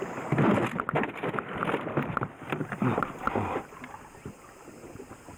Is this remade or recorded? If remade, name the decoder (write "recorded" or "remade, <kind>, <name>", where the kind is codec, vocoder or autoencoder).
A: recorded